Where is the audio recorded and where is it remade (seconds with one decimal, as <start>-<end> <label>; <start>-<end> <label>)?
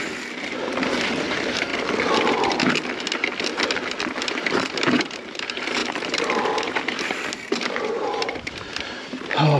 0.0-1.7 remade; 1.7-4.5 recorded; 4.5-9.6 remade